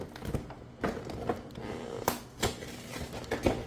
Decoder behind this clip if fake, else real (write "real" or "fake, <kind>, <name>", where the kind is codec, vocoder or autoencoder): real